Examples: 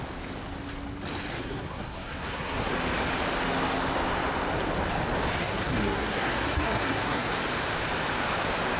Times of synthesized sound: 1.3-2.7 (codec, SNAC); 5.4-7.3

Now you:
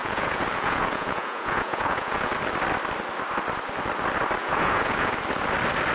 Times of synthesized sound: 0.0-2.3 (vocoder, Vocos); 4.4-5.1